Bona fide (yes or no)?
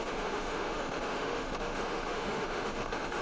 no